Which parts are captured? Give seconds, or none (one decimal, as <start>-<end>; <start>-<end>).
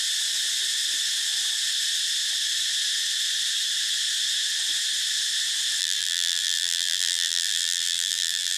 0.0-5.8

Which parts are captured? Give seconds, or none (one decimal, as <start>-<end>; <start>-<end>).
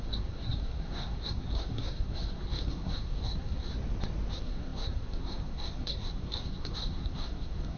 3.7-4.3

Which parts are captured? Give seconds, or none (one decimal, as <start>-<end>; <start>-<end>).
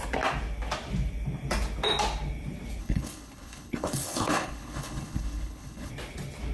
0.0-2.8; 5.9-6.5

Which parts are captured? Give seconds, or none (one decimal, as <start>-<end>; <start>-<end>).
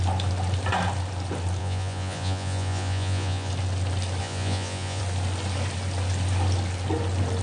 0.0-1.6; 3.5-4.2; 5.0-7.4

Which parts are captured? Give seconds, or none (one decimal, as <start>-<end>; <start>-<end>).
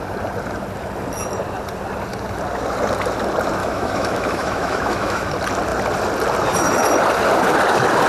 0.0-3.6; 5.3-8.1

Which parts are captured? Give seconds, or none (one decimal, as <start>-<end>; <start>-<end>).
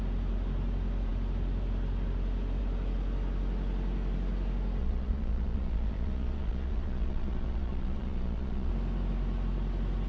0.0-4.8; 8.7-10.1